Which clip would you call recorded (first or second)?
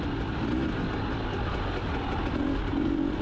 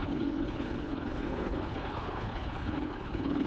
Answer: first